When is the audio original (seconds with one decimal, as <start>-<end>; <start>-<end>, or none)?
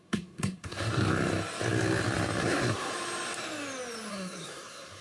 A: 1.0-2.4; 2.9-4.1